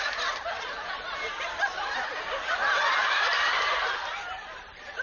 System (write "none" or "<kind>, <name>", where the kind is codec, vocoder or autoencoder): vocoder, BigVGAN v2